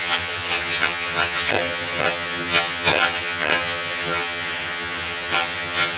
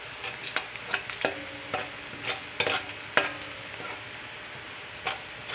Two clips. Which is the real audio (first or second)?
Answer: second